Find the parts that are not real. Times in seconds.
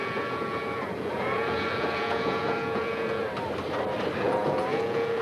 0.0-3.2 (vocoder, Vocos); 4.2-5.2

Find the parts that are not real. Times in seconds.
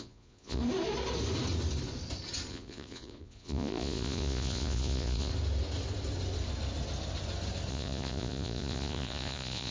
0.0-0.6 (vocoder, Vocos); 2.5-5.3; 7.7-9.7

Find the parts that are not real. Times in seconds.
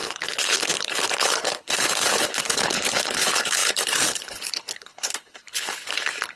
0.0-6.4 (codec, HILCodec)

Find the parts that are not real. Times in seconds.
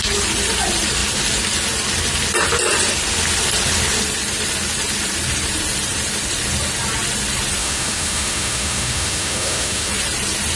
7.6-9.9 (autoencoder, DAC-VAE)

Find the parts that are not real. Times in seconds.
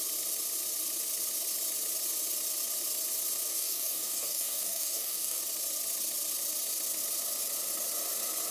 3.5-5.4 (codec, DAC)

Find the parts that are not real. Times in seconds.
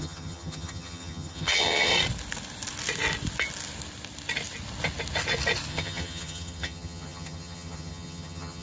0.0-1.9 (vocoder, HiFi-GAN); 5.7-8.6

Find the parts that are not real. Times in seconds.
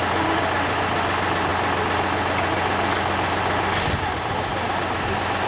none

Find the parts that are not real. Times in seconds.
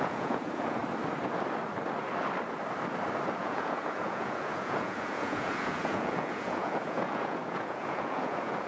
0.0-0.8 (vocoder, Vocos); 3.4-8.7